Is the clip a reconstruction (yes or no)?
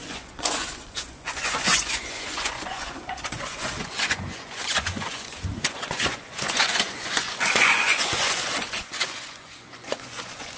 yes